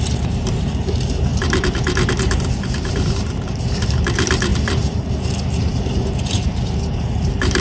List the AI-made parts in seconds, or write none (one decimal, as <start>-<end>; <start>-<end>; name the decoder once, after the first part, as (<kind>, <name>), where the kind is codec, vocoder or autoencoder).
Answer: 0.0-7.6 (vocoder, BigVGAN v2)